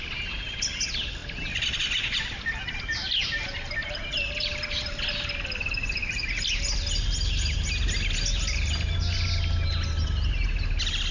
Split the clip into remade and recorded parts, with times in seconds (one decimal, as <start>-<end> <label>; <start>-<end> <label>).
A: 0.0-11.1 recorded